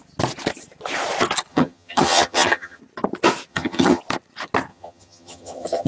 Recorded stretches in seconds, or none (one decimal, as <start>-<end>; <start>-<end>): 0.0-1.5; 2.8-3.5; 4.0-4.7